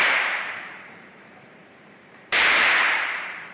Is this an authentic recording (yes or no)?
no